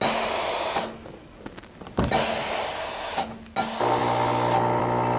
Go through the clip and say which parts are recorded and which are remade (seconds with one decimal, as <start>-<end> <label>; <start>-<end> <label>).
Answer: 0.0-5.2 recorded